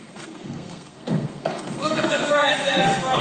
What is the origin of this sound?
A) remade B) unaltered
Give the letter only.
A